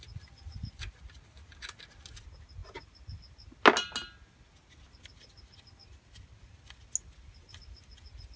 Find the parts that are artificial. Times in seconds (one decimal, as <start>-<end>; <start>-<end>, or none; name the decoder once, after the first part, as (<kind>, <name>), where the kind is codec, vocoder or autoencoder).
none